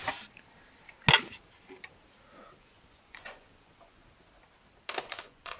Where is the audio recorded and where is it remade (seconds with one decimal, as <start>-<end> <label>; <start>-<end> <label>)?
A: 0.0-2.6 recorded; 2.6-4.0 remade; 4.0-5.0 recorded; 5.0-5.6 remade

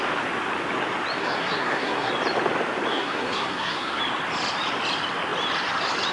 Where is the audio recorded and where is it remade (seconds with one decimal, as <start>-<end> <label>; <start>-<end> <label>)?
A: 0.0-1.2 recorded; 1.2-2.1 remade; 2.1-2.9 recorded; 2.9-4.0 remade; 4.0-6.1 recorded